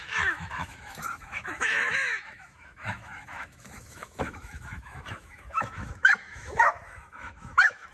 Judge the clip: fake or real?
fake